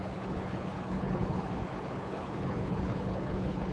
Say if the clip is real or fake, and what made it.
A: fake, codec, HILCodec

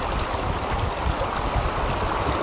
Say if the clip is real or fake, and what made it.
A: real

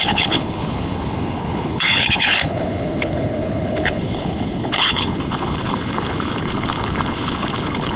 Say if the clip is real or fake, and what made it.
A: fake, codec, HILCodec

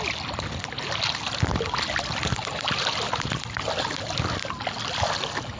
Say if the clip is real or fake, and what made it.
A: real